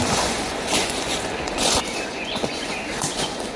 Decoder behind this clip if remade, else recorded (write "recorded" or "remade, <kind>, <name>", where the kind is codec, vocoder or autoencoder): remade, vocoder, Vocos